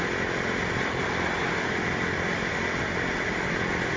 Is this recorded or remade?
recorded